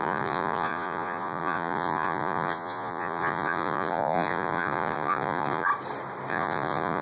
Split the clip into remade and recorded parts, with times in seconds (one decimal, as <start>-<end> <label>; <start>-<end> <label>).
0.0-5.7 remade; 5.7-6.3 recorded; 6.3-7.0 remade